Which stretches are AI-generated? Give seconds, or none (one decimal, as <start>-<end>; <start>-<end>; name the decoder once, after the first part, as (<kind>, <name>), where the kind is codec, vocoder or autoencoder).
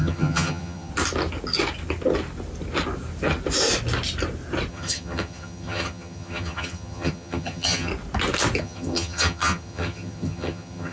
0.0-0.9 (vocoder, HiFi-GAN); 4.7-7.9; 8.6-10.9